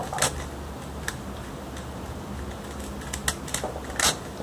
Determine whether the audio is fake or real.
real